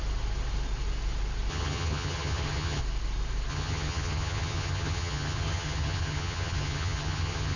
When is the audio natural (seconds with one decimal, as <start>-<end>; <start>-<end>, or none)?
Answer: 0.0-1.5; 2.8-3.5